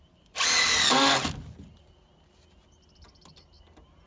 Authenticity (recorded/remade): recorded